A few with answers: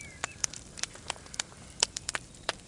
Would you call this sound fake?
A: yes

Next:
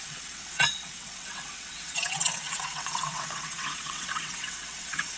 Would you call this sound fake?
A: yes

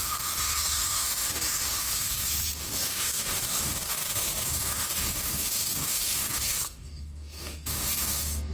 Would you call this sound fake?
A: yes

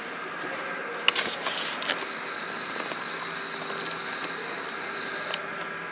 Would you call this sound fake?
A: no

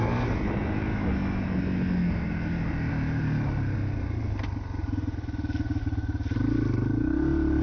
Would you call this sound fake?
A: no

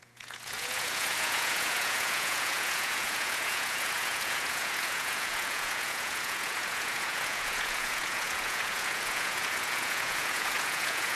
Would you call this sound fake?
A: yes